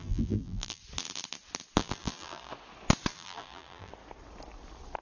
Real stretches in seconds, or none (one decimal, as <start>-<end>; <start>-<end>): 0.8-1.8; 2.5-3.1; 3.9-5.0